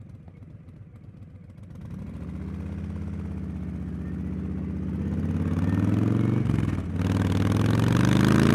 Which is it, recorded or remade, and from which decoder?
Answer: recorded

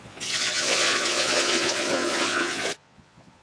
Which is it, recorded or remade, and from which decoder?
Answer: remade, vocoder, Vocos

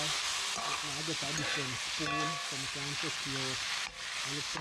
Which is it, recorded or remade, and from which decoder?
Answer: recorded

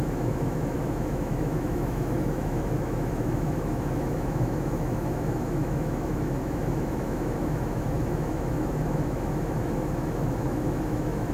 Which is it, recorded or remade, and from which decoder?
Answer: remade, autoencoder, DAC-VAE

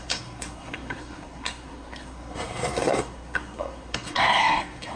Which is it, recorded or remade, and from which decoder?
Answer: remade, codec, SNAC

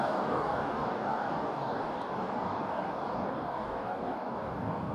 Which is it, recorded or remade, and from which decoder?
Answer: remade, codec, DAC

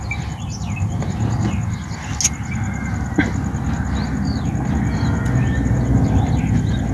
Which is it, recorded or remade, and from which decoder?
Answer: recorded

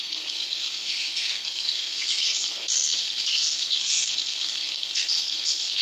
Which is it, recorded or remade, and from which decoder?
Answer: remade, codec, SNAC